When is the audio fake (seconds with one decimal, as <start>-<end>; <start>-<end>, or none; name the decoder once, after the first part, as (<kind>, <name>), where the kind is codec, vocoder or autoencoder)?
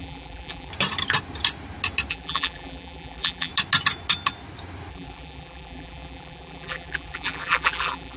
0.0-0.7 (vocoder, BigVGAN v2); 2.1-3.5; 4.9-8.2